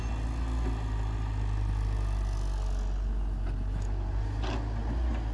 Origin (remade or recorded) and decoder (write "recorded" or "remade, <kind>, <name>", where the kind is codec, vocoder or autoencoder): recorded